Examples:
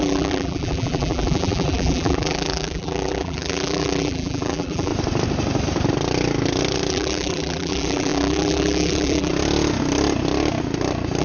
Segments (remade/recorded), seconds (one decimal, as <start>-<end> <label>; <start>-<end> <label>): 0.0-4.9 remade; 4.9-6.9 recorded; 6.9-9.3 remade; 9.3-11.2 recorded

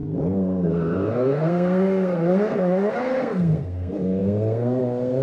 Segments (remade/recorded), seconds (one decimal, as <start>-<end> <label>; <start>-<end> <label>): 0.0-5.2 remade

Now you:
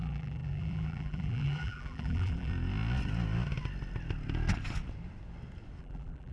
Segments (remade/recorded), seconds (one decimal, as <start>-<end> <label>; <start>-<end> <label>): 0.0-2.5 remade; 2.5-5.8 recorded; 5.8-6.3 remade

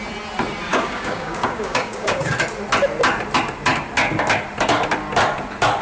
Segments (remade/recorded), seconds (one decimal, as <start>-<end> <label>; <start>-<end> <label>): 0.0-0.7 recorded; 0.7-2.3 remade; 2.3-5.8 recorded

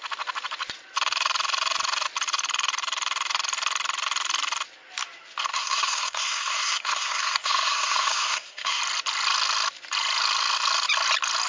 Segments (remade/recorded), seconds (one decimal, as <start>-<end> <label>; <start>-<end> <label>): 0.0-5.5 recorded; 5.5-8.8 remade; 8.8-11.5 recorded

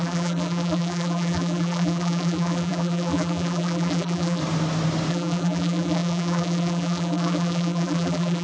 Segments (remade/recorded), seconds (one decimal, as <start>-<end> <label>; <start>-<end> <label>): 0.0-4.4 remade; 4.4-5.1 recorded; 5.1-8.4 remade

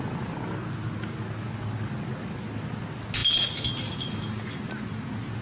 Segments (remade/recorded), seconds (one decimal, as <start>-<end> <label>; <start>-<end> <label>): 0.0-5.4 recorded